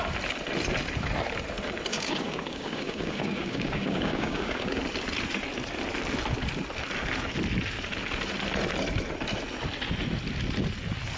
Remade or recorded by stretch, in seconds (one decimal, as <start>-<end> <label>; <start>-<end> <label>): 0.0-1.9 recorded; 1.9-4.8 remade; 4.8-11.2 recorded